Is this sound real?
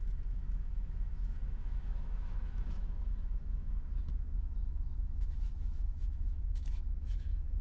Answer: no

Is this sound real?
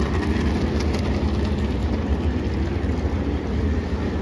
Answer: yes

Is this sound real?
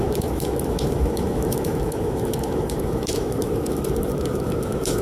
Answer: no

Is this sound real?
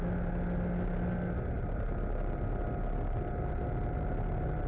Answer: yes